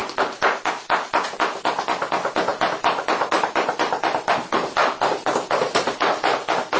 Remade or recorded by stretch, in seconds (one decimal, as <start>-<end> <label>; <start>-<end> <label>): 0.0-2.5 recorded; 2.5-6.1 remade; 6.1-6.8 recorded